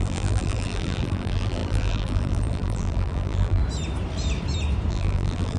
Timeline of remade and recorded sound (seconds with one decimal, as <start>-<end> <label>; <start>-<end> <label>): 0.0-3.6 remade; 3.6-4.9 recorded; 4.9-5.6 remade